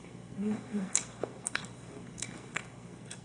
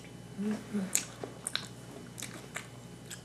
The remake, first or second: first